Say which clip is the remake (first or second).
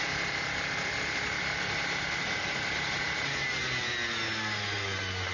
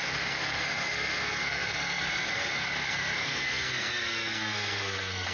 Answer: second